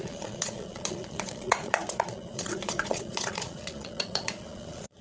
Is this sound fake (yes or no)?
yes